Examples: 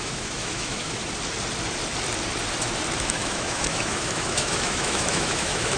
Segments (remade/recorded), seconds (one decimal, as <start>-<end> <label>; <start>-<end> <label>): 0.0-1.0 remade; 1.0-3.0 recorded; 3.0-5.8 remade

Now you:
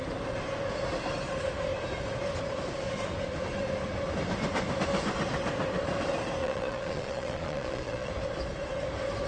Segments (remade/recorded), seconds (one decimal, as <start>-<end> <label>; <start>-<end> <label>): 0.0-6.4 recorded; 6.4-8.1 remade; 8.1-9.3 recorded

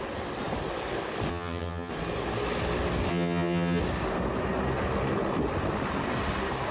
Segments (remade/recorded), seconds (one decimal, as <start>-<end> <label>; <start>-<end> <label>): 0.0-1.3 recorded; 1.3-1.9 remade; 1.9-3.1 recorded; 3.1-3.8 remade; 3.8-6.7 recorded